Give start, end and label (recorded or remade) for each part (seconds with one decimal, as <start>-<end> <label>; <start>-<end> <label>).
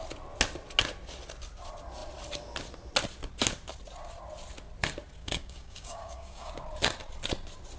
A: 0.0-5.2 recorded; 5.2-6.5 remade; 6.5-7.8 recorded